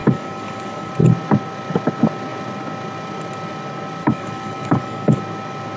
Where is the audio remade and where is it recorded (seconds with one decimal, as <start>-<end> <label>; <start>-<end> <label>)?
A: 0.0-0.9 remade; 0.9-4.0 recorded; 4.0-5.2 remade; 5.2-5.8 recorded